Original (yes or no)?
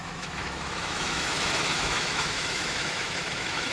no